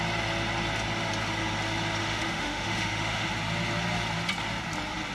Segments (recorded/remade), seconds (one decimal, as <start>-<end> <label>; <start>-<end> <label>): 0.0-2.0 recorded; 2.0-3.3 remade; 3.3-5.1 recorded